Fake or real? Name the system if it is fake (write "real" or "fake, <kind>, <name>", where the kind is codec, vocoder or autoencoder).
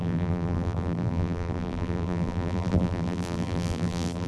fake, vocoder, BigVGAN v2